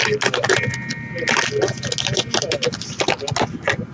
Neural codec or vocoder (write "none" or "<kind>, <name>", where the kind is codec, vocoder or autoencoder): none